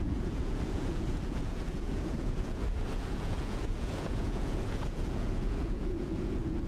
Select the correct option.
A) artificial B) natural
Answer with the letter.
A